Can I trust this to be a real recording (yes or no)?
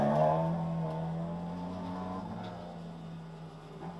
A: yes